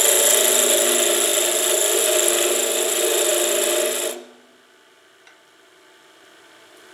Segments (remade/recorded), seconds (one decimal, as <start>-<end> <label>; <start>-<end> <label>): 0.0-6.9 recorded